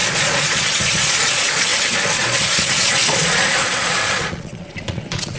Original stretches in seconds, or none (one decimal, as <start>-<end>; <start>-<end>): 1.7-2.2